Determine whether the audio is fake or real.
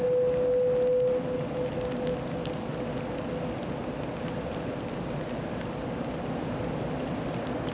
real